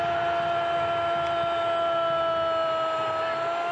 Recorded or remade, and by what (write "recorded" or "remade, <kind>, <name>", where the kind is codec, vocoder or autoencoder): recorded